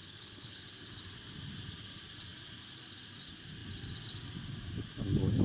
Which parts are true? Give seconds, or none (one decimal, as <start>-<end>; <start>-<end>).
0.6-5.4